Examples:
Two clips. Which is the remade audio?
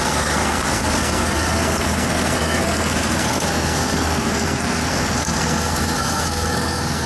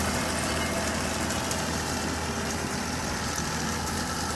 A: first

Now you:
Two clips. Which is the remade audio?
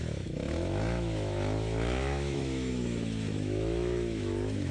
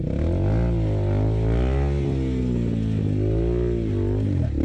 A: first